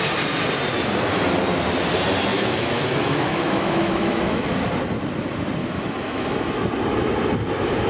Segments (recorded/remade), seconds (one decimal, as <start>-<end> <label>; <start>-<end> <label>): 0.0-2.3 recorded; 2.3-4.6 remade; 4.6-5.6 recorded; 5.6-6.6 remade; 6.6-7.9 recorded